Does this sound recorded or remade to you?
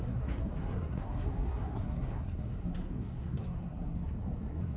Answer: remade